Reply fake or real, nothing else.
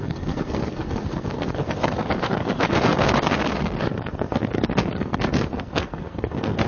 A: fake